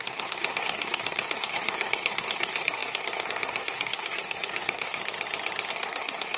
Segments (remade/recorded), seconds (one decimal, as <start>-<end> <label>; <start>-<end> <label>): 0.0-5.0 remade; 5.0-5.7 recorded; 5.7-6.4 remade